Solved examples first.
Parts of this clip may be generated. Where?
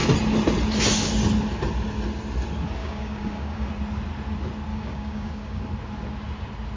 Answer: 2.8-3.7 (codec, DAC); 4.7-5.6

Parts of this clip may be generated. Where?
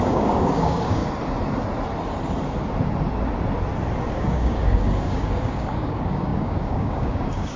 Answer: 0.0-1.0 (codec, DAC); 4.1-7.6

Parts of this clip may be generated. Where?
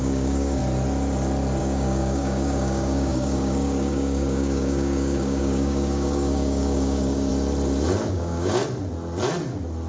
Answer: 0.0-0.6 (codec, DAC); 1.6-7.3; 8.1-8.6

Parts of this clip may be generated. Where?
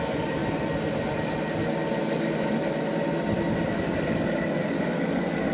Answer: 0.0-0.4 (codec, DAC); 3.7-5.5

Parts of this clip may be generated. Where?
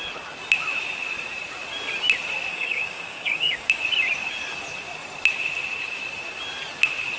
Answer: 2.5-3.8 (codec, DAC)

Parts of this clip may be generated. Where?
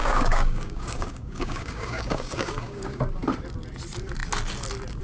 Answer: 0.0-3.0 (codec, DAC)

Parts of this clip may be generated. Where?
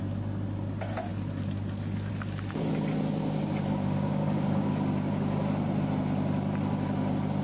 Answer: 3.2-4.7 (codec, DAC)